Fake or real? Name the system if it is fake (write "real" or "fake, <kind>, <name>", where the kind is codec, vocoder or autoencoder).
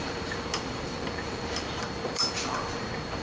fake, vocoder, BigVGAN v2